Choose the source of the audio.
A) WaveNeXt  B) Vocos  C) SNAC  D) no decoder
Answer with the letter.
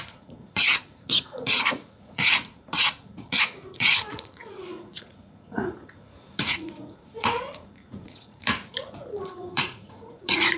B